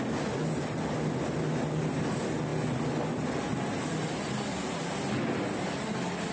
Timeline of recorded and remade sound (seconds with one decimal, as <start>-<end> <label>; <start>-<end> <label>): 0.0-6.3 recorded